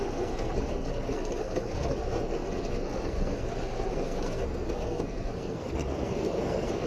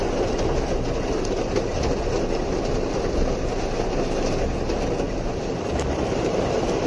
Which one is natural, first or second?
second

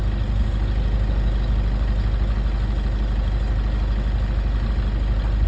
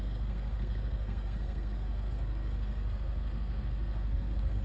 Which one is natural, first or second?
first